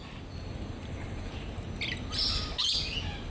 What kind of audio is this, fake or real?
real